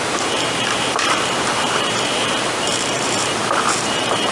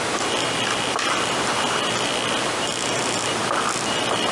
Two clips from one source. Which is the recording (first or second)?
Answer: second